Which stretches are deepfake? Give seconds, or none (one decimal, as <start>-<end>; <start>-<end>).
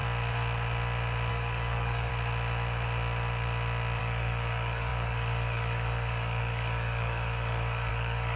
1.3-2.1; 4.0-8.4